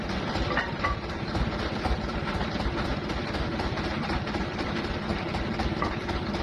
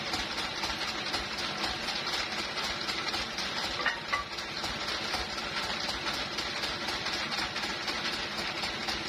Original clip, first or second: second